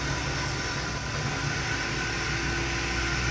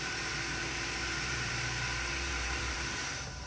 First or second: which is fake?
second